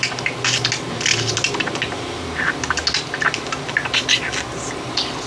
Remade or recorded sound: recorded